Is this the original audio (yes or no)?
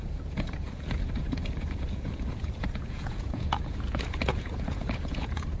no